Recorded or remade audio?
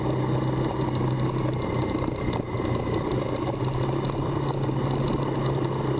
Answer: recorded